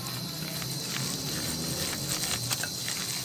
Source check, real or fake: real